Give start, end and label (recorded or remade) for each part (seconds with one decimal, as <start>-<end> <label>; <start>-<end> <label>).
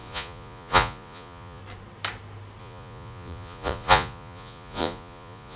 0.0-1.6 remade; 1.6-2.6 recorded; 2.6-5.6 remade